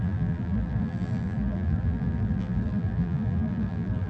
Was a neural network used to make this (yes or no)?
yes